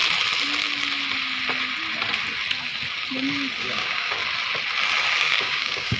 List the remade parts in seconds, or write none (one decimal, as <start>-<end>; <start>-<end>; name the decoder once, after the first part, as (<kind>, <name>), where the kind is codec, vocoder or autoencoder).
3.6-4.2 (codec, DAC); 5.2-6.0